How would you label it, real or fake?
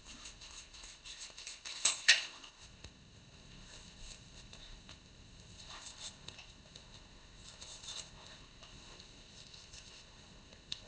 fake